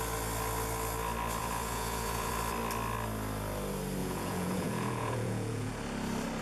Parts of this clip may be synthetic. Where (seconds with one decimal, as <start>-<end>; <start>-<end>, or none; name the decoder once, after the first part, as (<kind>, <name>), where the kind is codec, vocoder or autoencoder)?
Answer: 1.4-2.3 (vocoder, Vocos); 4.0-5.7